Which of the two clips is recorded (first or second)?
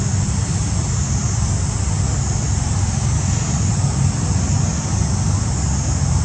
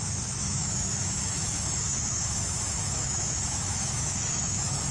first